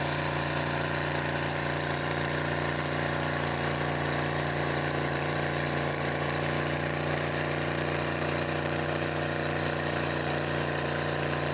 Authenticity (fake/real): fake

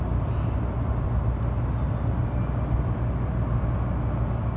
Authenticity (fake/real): real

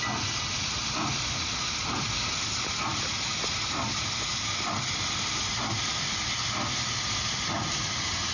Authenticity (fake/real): real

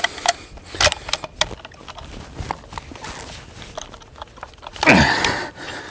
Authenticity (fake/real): real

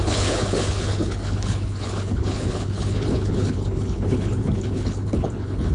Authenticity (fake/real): fake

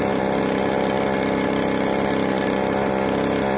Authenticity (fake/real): real